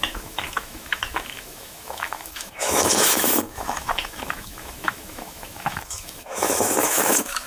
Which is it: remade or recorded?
remade